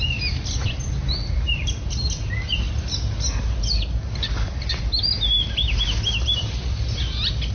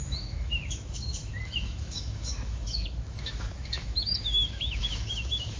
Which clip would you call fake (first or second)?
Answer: second